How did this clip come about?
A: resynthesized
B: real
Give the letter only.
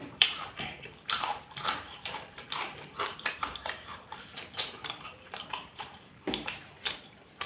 A